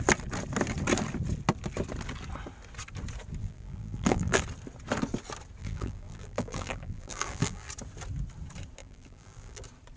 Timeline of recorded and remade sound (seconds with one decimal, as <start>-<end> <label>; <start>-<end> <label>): 0.0-3.4 recorded; 3.4-4.4 remade; 4.4-5.6 recorded; 5.6-7.7 remade; 7.7-8.8 recorded; 8.8-9.6 remade; 9.6-10.0 recorded